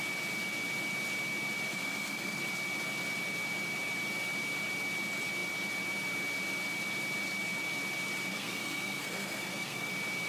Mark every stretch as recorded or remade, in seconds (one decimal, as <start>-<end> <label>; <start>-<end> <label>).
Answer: 0.0-1.7 recorded; 1.7-2.4 remade; 2.4-8.3 recorded; 8.3-9.9 remade; 9.9-10.3 recorded